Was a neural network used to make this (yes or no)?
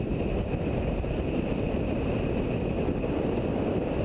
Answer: no